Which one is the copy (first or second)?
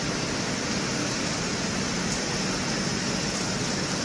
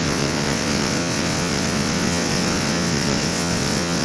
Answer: second